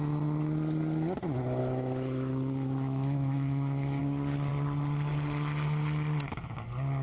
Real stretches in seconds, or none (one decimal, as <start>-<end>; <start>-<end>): 0.0-1.6; 4.0-7.0